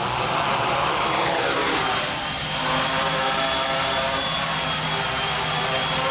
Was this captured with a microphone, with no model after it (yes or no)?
yes